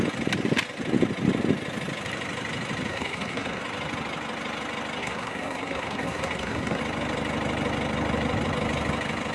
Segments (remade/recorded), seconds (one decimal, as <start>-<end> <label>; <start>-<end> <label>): 0.0-2.9 recorded; 2.9-3.6 remade; 3.6-5.0 recorded; 5.0-6.8 remade; 6.8-9.3 recorded